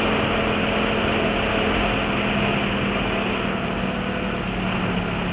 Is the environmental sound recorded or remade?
recorded